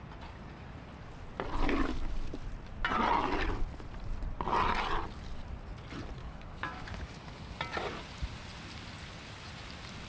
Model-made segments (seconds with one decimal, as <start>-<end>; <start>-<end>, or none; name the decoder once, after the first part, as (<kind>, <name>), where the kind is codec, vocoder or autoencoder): 6.2-7.6 (codec, DAC)

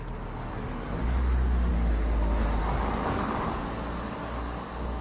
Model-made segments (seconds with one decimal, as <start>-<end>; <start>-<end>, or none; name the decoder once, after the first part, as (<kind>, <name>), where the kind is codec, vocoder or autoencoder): 0.0-1.7 (codec, DAC); 2.6-5.0

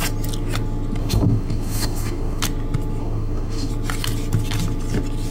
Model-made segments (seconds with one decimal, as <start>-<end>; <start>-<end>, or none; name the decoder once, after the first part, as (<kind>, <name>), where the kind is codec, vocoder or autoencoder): 1.0-2.4 (codec, DAC); 3.0-3.7

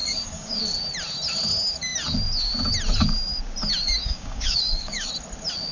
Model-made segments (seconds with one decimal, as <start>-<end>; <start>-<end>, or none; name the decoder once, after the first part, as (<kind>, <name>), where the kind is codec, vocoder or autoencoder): 0.0-0.6 (codec, DAC); 4.0-5.1